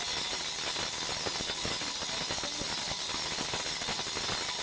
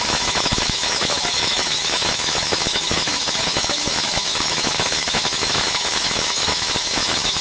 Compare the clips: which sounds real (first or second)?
first